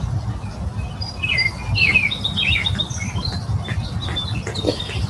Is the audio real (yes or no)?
yes